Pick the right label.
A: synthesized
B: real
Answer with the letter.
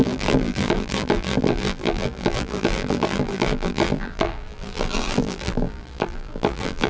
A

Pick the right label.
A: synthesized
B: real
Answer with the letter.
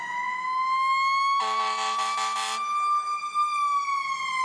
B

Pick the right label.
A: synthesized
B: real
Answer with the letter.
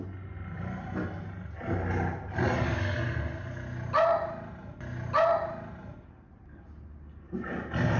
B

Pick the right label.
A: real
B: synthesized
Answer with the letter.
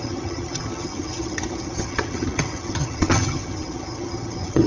B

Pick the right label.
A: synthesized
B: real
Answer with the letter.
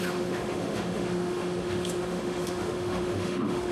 A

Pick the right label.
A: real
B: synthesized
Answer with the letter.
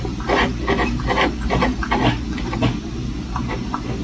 A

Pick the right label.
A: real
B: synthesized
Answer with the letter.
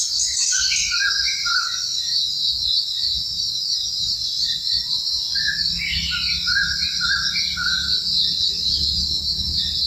A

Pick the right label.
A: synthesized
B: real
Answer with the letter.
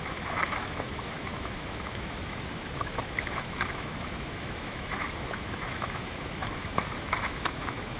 A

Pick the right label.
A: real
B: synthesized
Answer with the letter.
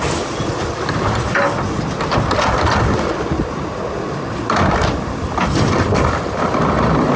A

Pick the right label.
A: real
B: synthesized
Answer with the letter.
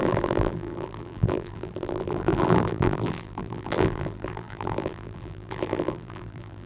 B